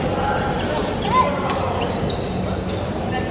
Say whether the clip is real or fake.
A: real